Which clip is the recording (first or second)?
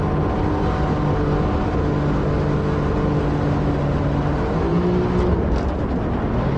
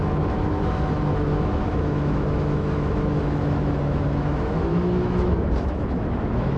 first